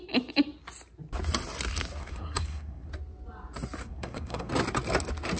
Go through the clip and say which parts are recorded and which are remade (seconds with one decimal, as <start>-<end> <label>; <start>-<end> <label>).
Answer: 0.0-2.0 recorded; 2.0-2.9 remade; 2.9-3.8 recorded; 3.8-4.5 remade; 4.5-5.4 recorded